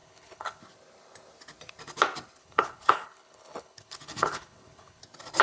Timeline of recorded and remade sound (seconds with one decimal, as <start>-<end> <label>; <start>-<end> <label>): 0.0-0.6 remade; 0.6-2.4 recorded; 2.4-5.0 remade; 5.0-5.4 recorded